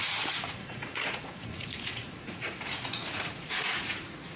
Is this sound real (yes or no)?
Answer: no